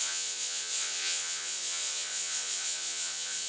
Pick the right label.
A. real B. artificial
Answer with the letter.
B